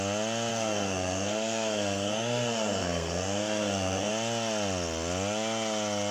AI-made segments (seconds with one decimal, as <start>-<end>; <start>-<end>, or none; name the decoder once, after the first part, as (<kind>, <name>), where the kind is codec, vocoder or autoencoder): 0.5-4.1 (codec, SNAC)